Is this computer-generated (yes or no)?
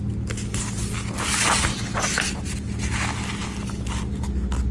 no